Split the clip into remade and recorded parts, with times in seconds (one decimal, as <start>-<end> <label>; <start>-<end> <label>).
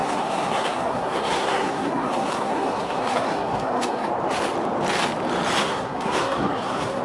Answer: 0.0-4.1 remade; 4.1-5.6 recorded; 5.6-7.0 remade